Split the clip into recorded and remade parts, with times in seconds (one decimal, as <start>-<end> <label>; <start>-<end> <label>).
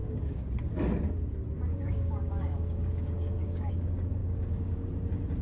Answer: 0.0-0.5 remade; 0.5-1.7 recorded; 1.7-3.7 remade; 3.7-4.2 recorded; 4.2-4.8 remade; 4.8-5.4 recorded